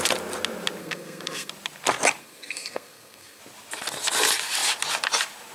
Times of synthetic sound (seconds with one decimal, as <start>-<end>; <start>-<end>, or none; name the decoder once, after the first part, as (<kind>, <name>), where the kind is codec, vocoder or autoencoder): 0.8-1.5 (codec, SNAC); 2.2-3.4

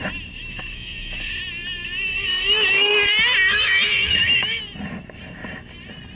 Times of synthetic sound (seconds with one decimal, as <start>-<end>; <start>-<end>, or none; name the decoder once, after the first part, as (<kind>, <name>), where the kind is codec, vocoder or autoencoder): 0.4-1.3 (autoencoder, DAC-VAE); 2.1-2.9; 3.5-4.6

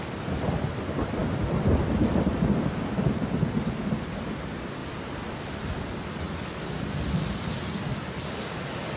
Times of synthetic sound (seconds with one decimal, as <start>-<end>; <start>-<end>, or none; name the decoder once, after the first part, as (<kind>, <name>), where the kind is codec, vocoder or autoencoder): 1.2-2.3 (vocoder, BigVGAN v2)

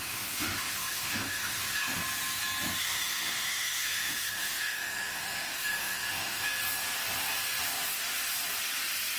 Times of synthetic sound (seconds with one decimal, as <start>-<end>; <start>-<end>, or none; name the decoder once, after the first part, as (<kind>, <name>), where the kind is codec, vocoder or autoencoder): 0.0-2.0 (autoencoder, DAC-VAE); 2.8-6.5

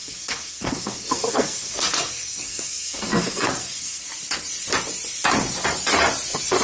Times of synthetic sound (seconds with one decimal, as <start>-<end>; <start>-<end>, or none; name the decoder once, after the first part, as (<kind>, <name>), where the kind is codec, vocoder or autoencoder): 0.0-4.0 (codec, SNAC)